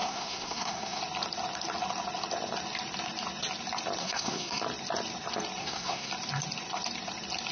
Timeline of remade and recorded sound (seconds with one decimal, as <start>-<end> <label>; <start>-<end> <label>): 0.0-1.0 remade; 1.0-4.0 recorded; 4.0-4.6 remade; 4.6-5.6 recorded; 5.6-6.1 remade; 6.1-7.5 recorded